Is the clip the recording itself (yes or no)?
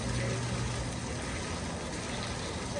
yes